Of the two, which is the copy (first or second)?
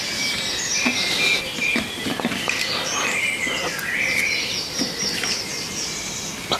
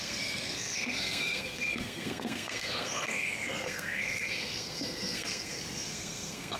second